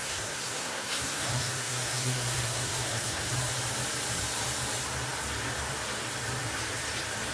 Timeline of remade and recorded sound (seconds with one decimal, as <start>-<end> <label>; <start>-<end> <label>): 0.0-3.3 remade; 3.3-7.3 recorded